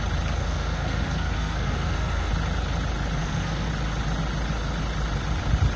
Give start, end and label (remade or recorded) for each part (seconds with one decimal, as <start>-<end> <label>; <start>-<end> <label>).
0.0-0.4 recorded; 0.4-2.3 remade; 2.3-3.2 recorded; 3.2-3.7 remade; 3.7-5.8 recorded